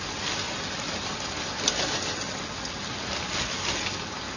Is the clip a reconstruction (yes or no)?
no